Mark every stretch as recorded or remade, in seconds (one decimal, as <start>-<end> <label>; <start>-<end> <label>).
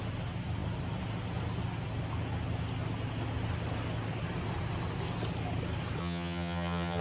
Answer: 0.0-6.0 recorded; 6.0-7.0 remade